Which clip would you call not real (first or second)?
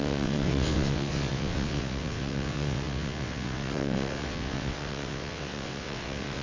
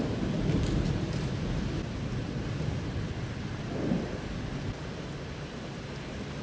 first